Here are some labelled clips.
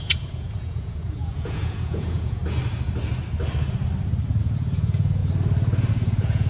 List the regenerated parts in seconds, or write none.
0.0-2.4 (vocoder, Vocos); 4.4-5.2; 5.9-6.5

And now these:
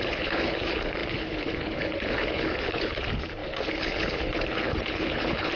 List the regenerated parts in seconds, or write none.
0.0-5.6 (codec, HILCodec)

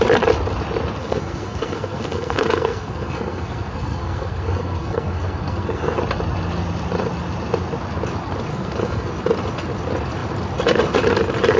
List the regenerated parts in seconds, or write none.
1.0-6.0 (codec, SNAC); 8.5-9.1

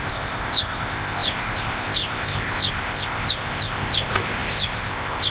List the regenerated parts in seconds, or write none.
0.0-5.3 (codec, ZipCodec)

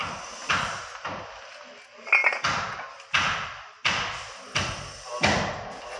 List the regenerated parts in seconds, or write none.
none

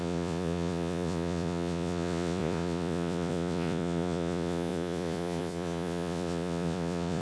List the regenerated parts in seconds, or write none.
0.0-7.2 (vocoder, Vocos)

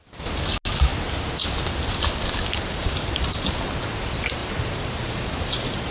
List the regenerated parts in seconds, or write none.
2.8-3.4 (vocoder, BigVGAN v2); 4.4-5.9